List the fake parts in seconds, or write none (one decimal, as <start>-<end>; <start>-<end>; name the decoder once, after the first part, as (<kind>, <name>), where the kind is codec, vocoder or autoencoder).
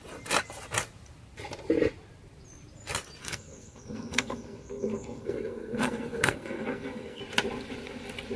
3.2-7.2 (codec, SNAC)